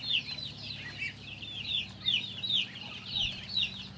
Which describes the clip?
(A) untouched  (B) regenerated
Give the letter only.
A